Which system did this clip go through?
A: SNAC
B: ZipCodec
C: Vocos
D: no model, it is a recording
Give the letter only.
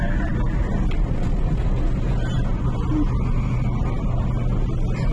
D